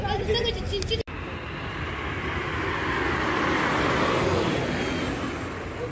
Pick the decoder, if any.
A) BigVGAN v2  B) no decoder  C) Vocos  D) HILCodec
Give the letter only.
B